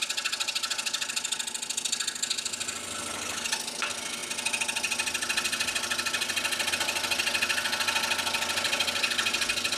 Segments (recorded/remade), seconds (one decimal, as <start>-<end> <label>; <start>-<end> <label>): 0.0-9.8 recorded